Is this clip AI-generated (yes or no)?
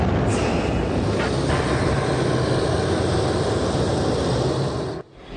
no